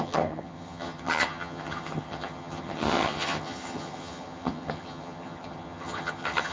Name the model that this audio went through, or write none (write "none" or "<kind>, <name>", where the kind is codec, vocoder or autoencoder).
vocoder, HiFi-GAN